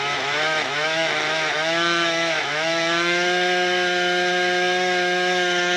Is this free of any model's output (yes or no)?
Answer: no